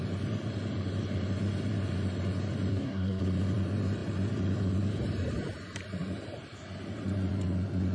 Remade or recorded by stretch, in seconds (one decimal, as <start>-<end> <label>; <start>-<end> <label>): 0.0-2.7 recorded; 2.7-3.2 remade; 3.2-7.9 recorded